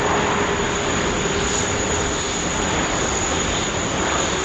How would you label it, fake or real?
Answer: real